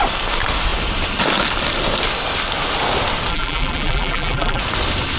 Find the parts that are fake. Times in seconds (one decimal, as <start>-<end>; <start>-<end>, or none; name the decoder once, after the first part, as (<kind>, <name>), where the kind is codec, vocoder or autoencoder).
3.3-4.6 (vocoder, BigVGAN v2)